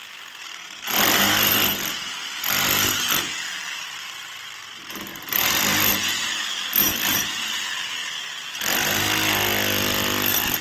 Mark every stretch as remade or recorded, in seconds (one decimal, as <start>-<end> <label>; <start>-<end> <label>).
0.0-5.1 recorded; 5.1-5.6 remade; 5.6-6.9 recorded; 6.9-7.6 remade; 7.6-10.6 recorded

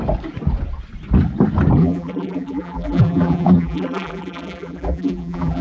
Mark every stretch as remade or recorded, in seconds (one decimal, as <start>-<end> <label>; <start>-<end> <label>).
0.0-1.8 recorded; 1.8-5.6 remade

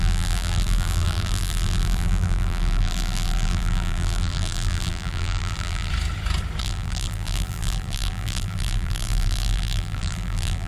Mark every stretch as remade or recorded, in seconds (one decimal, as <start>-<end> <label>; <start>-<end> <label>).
0.0-5.9 remade; 5.9-6.6 recorded; 6.6-10.7 remade

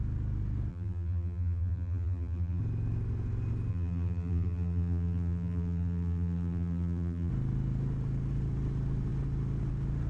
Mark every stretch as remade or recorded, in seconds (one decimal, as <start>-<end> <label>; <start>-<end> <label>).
0.0-0.7 recorded; 0.7-2.6 remade; 2.6-3.7 recorded; 3.7-7.3 remade; 7.3-10.1 recorded

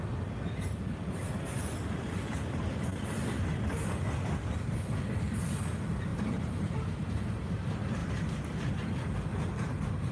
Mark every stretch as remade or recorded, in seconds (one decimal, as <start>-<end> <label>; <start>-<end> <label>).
0.0-6.1 recorded; 6.1-7.5 remade; 7.5-8.0 recorded; 8.0-8.9 remade; 8.9-10.1 recorded

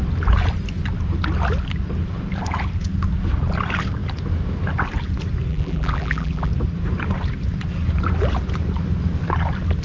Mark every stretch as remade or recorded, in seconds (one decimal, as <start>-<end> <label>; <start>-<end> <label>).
0.0-5.5 recorded; 5.5-6.5 remade; 6.5-9.8 recorded

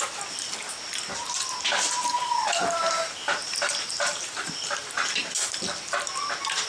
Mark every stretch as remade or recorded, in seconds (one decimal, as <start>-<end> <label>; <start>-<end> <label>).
0.0-2.0 recorded; 2.0-4.9 remade; 4.9-6.7 recorded

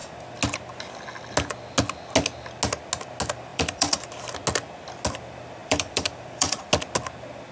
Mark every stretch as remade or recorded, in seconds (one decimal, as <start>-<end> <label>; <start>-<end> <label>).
0.0-3.5 recorded; 3.5-4.2 remade; 4.2-5.6 recorded; 5.6-6.6 remade; 6.6-7.5 recorded